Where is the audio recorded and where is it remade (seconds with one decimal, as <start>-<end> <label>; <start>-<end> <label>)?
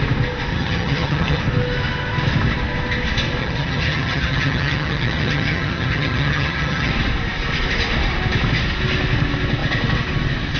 0.0-0.5 recorded; 0.5-1.4 remade; 1.4-3.4 recorded; 3.4-6.9 remade; 6.9-10.6 recorded